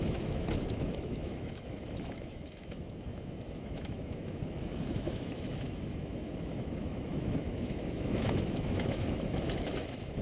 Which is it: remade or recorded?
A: remade